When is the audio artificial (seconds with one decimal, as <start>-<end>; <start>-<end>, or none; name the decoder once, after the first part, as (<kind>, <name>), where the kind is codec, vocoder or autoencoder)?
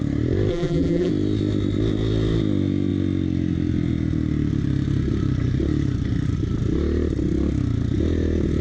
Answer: 0.5-1.1 (vocoder, BigVGAN v2)